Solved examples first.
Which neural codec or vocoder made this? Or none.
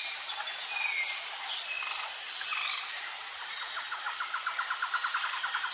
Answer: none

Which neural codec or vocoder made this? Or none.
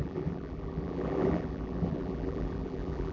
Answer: vocoder, BigVGAN v2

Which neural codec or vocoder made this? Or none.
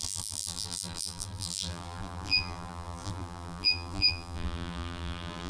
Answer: vocoder, BigVGAN v2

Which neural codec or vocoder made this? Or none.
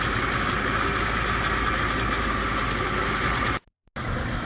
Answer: none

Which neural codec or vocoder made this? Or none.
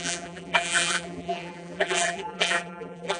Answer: vocoder, BigVGAN v2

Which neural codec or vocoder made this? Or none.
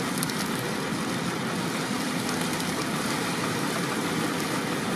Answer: none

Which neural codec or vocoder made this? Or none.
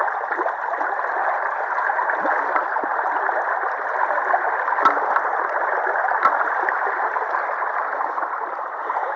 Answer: none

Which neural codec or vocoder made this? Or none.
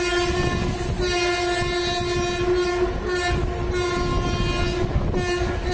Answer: none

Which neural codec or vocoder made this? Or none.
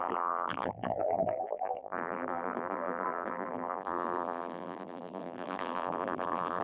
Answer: vocoder, BigVGAN v2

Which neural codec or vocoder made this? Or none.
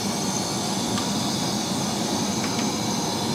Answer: none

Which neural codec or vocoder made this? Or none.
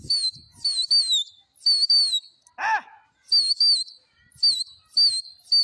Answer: none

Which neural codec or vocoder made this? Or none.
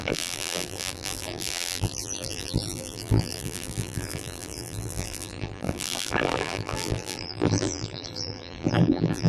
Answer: vocoder, BigVGAN v2